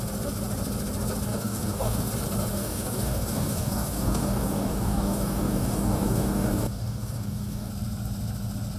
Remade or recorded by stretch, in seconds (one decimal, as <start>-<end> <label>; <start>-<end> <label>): 0.0-1.3 recorded; 1.3-2.1 remade; 2.1-2.5 recorded; 2.5-7.7 remade; 7.7-8.8 recorded

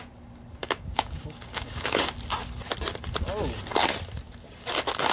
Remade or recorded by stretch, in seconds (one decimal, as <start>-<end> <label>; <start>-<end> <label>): 0.0-0.6 recorded; 0.6-2.1 remade; 2.1-5.1 recorded